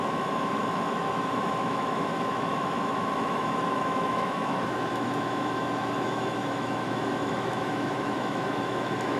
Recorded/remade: remade